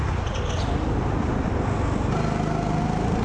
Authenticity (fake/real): real